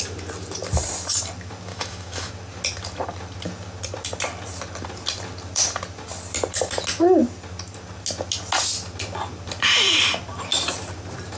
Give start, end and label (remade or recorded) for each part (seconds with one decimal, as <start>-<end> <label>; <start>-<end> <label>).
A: 0.0-1.7 recorded; 1.7-2.3 remade; 2.3-11.4 recorded